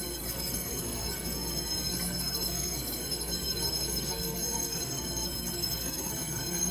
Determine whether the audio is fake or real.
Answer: fake